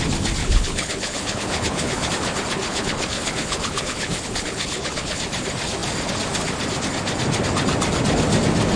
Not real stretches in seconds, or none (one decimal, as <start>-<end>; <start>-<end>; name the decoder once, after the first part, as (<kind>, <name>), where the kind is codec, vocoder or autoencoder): 0.4-2.1 (codec, HILCodec); 2.6-5.2